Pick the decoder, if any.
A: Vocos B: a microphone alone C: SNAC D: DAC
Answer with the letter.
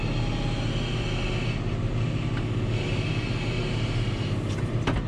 B